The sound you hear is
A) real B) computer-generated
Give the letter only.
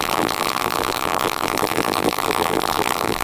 B